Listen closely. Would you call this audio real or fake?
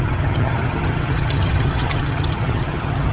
fake